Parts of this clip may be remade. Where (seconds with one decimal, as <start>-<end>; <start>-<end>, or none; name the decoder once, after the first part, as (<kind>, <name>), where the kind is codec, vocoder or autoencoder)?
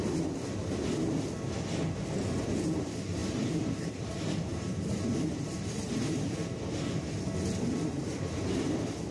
3.2-4.1 (vocoder, BigVGAN v2); 4.5-6.5